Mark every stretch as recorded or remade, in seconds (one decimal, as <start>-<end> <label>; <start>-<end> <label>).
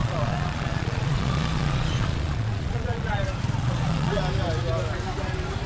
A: 0.0-3.2 remade; 3.2-3.6 recorded; 3.6-4.2 remade; 4.2-5.7 recorded